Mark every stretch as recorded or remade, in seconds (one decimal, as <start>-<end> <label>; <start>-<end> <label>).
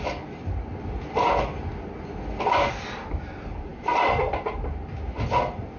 0.0-5.8 recorded